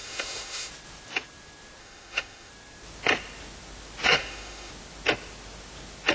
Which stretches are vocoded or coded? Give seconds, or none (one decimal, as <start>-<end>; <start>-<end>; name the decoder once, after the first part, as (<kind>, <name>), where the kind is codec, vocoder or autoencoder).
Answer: 0.0-0.7 (autoencoder, DAC-VAE); 1.8-2.5; 4.1-4.7